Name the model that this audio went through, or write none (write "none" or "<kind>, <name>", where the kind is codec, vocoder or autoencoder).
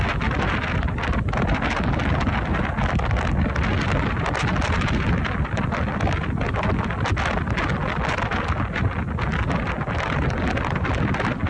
none